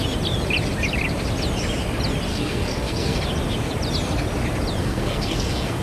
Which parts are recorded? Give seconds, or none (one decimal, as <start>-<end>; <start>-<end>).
0.0-2.3; 3.2-4.8